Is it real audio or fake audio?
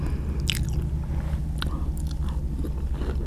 real